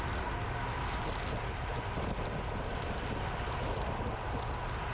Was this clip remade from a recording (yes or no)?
no